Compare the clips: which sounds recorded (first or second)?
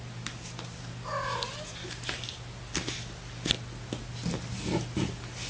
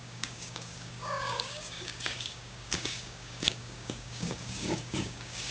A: first